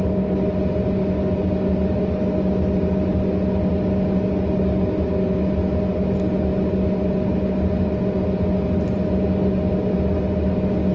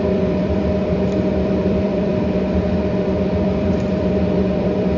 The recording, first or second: first